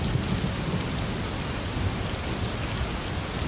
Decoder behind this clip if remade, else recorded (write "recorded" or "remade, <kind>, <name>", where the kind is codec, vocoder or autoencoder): recorded